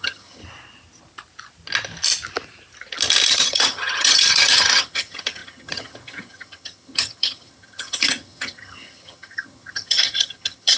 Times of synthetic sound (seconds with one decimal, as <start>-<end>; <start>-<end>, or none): 0.0-0.4; 3.3-10.8